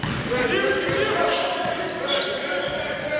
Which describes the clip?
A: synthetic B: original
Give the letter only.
B